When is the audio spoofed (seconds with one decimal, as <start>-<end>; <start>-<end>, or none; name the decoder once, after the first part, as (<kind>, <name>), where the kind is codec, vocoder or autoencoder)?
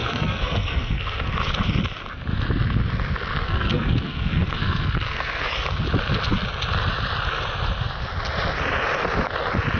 0.0-1.3 (codec, SNAC); 3.4-5.5